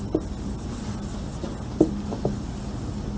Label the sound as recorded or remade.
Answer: recorded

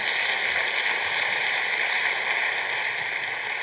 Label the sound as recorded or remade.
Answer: recorded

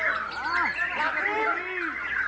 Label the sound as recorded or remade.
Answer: recorded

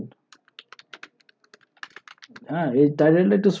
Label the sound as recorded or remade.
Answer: recorded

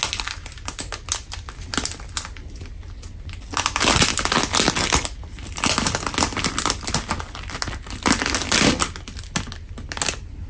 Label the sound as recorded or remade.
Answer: recorded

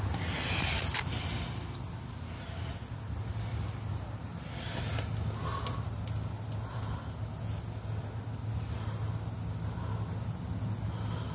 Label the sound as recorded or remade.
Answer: recorded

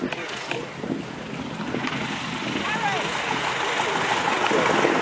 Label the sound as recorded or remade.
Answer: recorded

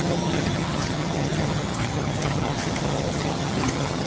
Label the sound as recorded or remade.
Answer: remade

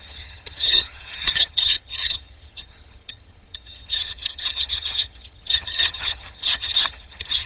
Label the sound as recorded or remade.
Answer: remade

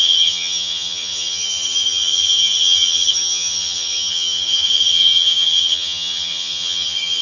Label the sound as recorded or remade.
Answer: remade